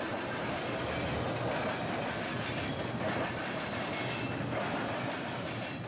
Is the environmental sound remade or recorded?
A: recorded